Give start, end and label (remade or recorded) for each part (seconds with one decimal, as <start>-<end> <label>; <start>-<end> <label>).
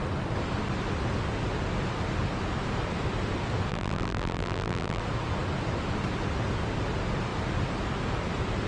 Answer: 0.0-3.7 recorded; 3.7-5.0 remade; 5.0-8.7 recorded